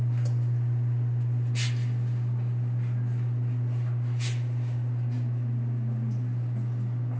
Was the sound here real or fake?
real